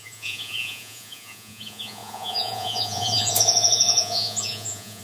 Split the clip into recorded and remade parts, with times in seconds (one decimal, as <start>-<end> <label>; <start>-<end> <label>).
0.0-5.0 remade